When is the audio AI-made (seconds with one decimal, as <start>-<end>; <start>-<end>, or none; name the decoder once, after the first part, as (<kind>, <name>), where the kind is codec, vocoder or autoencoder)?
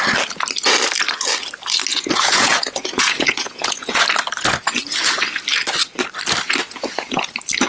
1.9-4.0 (vocoder, Vocos); 6.8-7.3